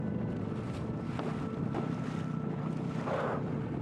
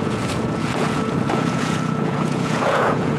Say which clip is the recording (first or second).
first